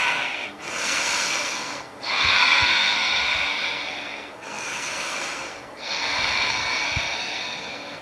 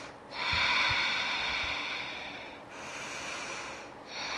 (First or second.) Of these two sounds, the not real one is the first